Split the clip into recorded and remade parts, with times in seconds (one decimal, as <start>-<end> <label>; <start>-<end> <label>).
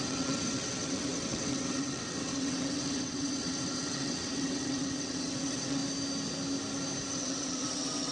0.0-5.8 remade; 5.8-7.1 recorded; 7.1-8.1 remade